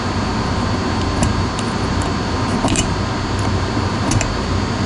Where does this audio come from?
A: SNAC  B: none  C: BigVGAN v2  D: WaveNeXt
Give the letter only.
C